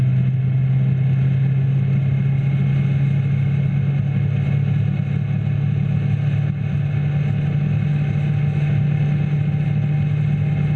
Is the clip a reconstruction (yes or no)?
no